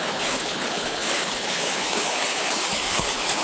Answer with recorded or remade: remade